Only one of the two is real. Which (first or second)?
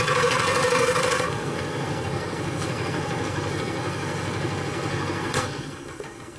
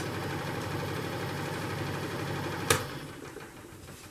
second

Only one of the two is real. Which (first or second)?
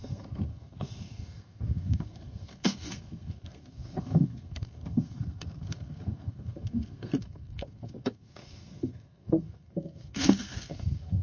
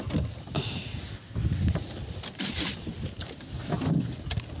second